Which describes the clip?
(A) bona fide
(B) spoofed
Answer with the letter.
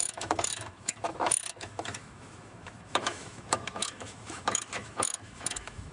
B